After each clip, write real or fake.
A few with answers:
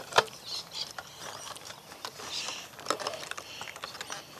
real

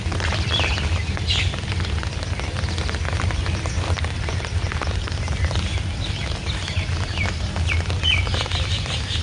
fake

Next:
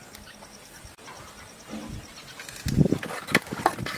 real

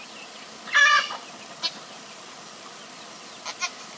real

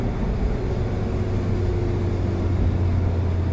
real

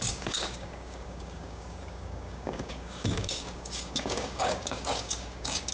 fake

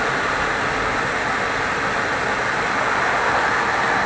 real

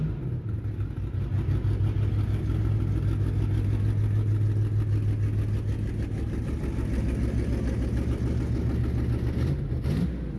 real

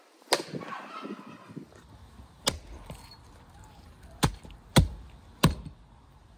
real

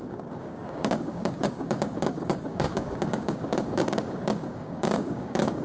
fake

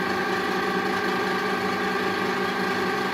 real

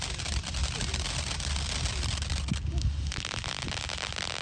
real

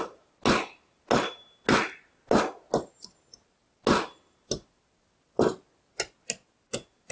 real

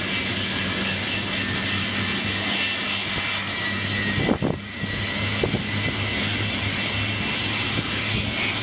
real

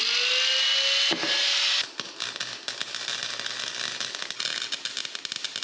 real